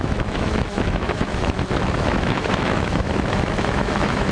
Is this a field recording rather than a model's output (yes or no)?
no